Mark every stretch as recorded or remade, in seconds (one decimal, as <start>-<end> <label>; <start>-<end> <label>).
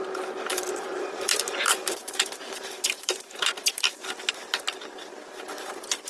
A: 0.0-0.5 recorded; 0.5-4.2 remade; 4.2-6.1 recorded